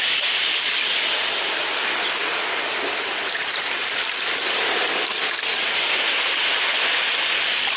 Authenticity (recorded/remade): recorded